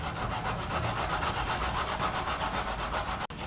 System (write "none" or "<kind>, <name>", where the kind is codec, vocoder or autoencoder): none